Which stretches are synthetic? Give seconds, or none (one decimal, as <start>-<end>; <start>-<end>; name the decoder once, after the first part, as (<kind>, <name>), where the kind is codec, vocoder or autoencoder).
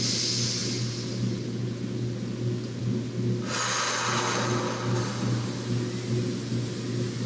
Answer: none